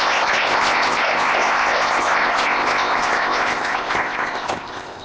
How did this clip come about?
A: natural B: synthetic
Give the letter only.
B